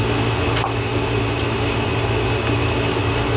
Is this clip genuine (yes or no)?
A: yes